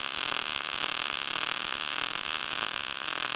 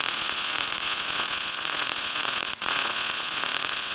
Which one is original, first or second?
first